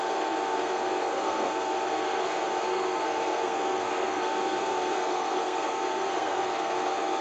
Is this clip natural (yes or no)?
no